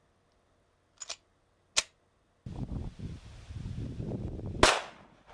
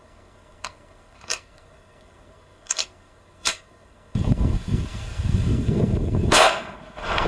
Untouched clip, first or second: first